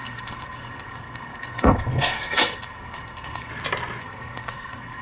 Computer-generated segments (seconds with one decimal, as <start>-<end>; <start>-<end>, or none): 0.0-3.5; 4.0-5.0